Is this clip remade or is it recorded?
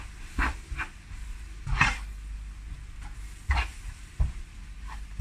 recorded